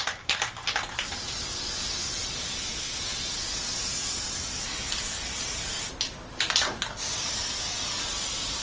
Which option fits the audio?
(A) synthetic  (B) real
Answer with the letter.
B